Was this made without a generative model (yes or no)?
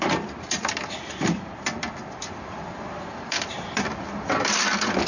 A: no